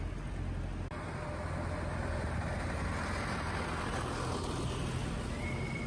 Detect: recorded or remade recorded